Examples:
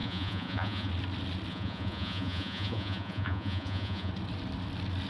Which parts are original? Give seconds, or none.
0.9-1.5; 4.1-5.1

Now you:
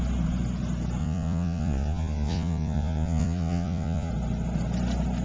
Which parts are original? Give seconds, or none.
0.0-1.0; 4.1-5.2

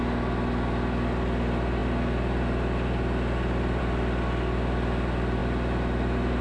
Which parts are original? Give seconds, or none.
0.0-6.4

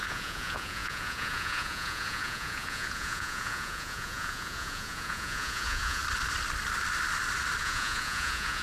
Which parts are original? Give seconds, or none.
6.0-7.6

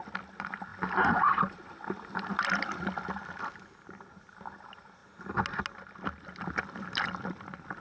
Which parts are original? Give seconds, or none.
0.0-7.8

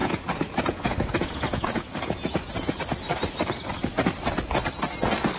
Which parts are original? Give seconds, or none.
2.8-5.4

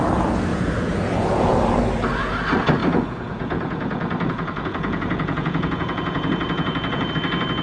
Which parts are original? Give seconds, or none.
0.0-0.5; 1.5-2.8; 7.1-7.6